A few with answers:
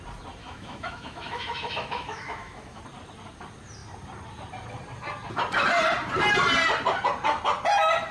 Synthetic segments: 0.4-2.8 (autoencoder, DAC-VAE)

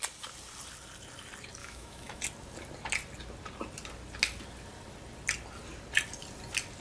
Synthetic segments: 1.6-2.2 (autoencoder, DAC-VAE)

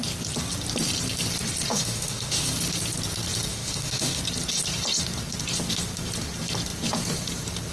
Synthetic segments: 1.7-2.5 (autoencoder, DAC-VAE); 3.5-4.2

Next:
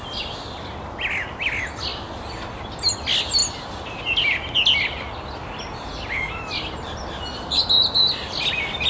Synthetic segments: none